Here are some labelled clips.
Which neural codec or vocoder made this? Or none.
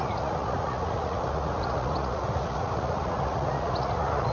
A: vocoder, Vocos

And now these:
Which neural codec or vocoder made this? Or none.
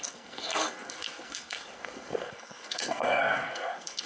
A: codec, SNAC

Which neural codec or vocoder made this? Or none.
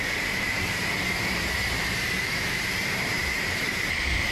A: vocoder, BigVGAN v2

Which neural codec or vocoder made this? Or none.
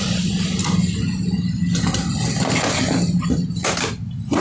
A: none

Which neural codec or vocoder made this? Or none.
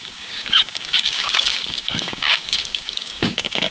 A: codec, DAC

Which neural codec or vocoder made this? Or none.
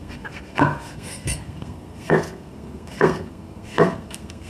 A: codec, SNAC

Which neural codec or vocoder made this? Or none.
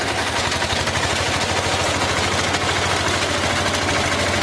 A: none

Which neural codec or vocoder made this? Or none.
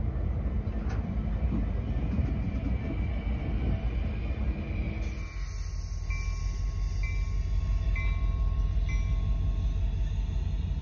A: none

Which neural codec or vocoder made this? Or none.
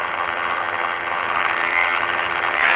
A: vocoder, HiFi-GAN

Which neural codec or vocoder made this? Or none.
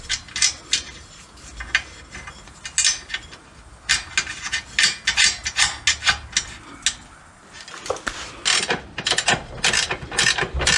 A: none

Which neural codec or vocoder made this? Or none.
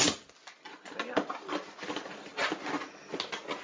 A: none